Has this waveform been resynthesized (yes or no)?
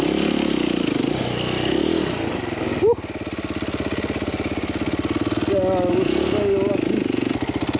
no